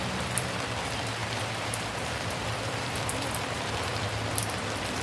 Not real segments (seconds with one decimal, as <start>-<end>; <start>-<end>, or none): 1.2-4.0